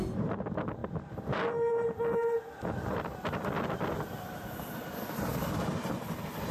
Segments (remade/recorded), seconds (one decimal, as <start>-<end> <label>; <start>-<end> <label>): 0.0-6.5 recorded

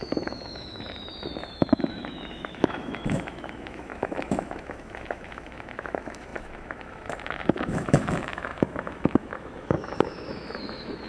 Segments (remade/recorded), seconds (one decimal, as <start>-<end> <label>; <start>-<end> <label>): 0.0-11.1 remade

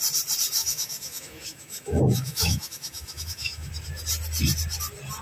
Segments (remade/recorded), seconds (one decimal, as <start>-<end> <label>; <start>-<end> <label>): 0.0-0.6 recorded; 0.6-3.7 remade; 3.7-5.2 recorded

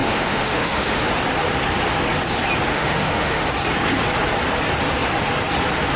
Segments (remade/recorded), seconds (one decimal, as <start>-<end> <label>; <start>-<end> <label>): 0.0-1.1 remade; 1.1-2.7 recorded; 2.7-3.5 remade; 3.5-6.0 recorded